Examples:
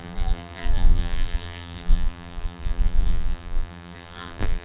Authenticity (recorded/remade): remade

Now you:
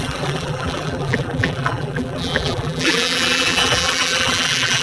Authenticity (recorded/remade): remade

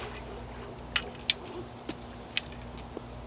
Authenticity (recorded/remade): recorded